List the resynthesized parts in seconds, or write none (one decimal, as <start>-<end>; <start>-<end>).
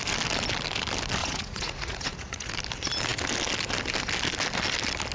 1.2-2.5